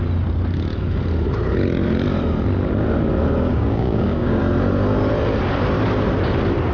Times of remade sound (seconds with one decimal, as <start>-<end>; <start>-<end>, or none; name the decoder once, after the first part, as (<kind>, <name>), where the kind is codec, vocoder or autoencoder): 3.5-4.4 (codec, DAC)